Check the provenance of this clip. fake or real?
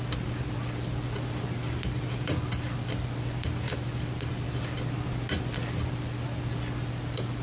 real